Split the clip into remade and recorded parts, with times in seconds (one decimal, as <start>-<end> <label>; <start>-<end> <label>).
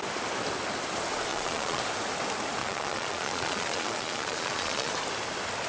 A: 0.0-1.3 recorded; 1.3-1.8 remade; 1.8-2.6 recorded; 2.6-4.9 remade; 4.9-5.7 recorded